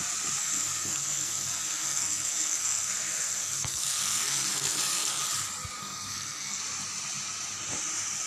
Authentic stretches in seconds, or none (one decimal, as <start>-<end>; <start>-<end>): 0.0-0.4; 5.2-5.8; 6.6-8.3